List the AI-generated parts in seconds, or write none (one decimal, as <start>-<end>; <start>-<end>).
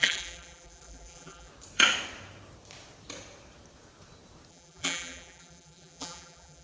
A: 0.0-1.5; 4.5-6.6